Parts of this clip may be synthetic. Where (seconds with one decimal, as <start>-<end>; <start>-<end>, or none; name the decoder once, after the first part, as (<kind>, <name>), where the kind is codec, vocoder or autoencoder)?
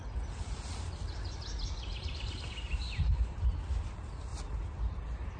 none